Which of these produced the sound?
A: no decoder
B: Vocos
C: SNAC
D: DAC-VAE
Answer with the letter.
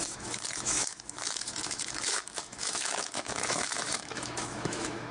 D